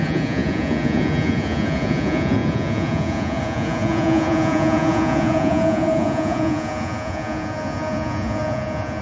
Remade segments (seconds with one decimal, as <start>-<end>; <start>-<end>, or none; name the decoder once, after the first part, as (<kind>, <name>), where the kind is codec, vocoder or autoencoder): 0.0-9.0 (vocoder, Vocos)